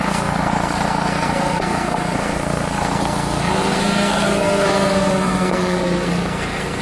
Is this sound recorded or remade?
remade